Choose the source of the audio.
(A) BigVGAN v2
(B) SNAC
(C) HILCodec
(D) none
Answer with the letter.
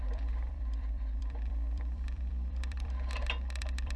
A